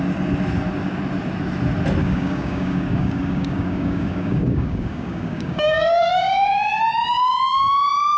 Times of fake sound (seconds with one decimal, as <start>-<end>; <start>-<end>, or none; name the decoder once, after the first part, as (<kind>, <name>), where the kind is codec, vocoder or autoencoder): 2.0-6.8 (codec, DAC)